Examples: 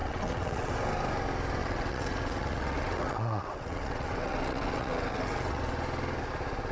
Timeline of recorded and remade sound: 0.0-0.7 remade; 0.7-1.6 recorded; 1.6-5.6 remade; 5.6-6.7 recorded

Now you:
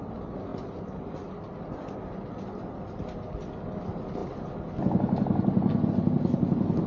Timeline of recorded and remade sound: 0.0-6.9 recorded